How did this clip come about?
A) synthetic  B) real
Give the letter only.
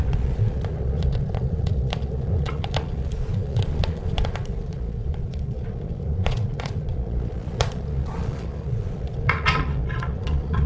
A